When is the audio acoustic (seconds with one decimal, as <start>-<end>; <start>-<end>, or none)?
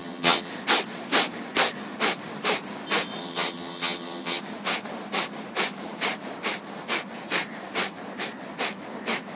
0.5-3.2; 4.4-9.4